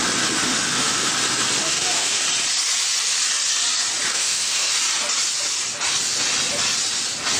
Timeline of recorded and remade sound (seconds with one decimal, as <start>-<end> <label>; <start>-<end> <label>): 0.0-0.4 recorded; 0.4-1.1 remade; 1.1-1.6 recorded; 1.6-2.2 remade; 2.2-4.1 recorded; 4.1-4.7 remade; 4.7-7.4 recorded